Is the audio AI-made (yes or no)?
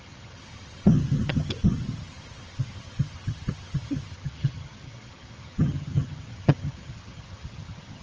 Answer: yes